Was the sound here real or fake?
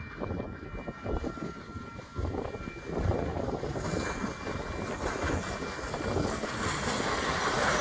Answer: real